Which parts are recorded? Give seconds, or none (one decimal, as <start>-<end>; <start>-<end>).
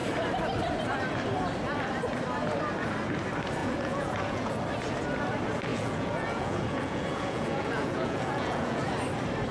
0.0-3.6; 4.5-5.7; 8.9-9.5